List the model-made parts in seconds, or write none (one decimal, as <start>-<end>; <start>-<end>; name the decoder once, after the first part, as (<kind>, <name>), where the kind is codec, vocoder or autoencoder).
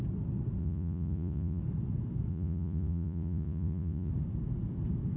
0.6-1.6 (vocoder, Vocos); 2.3-4.1